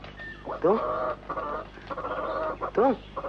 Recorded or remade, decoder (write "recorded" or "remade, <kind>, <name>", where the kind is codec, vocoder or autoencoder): recorded